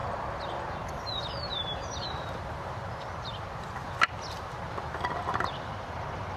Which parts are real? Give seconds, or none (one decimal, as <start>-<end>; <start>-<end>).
0.0-1.3; 3.3-4.3